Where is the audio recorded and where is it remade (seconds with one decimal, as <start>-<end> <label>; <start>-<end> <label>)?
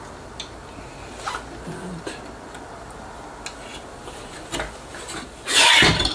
0.0-6.1 recorded